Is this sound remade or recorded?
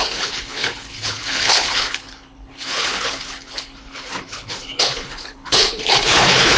remade